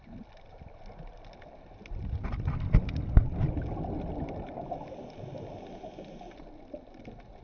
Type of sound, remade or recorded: recorded